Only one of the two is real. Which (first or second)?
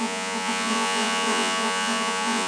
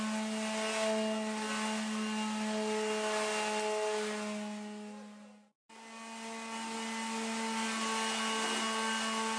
second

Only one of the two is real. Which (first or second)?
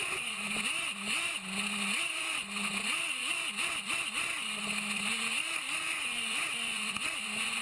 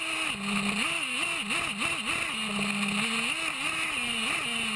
second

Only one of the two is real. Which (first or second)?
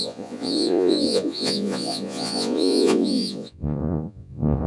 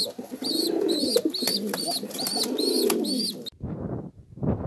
second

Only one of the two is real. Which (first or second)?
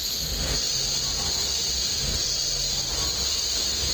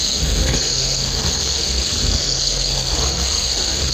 first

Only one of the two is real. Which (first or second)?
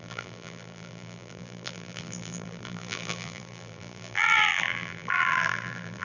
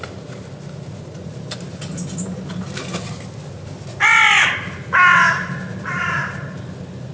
second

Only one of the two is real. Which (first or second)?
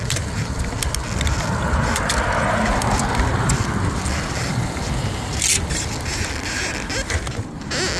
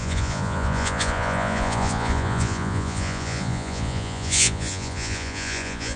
first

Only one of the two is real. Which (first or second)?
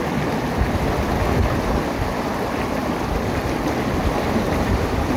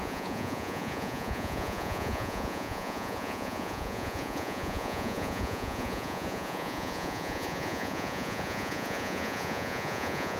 first